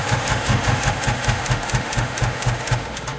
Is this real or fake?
fake